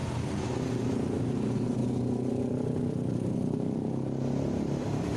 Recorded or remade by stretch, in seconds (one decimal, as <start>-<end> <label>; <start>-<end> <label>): 0.0-0.9 recorded; 0.9-1.8 remade; 1.8-5.2 recorded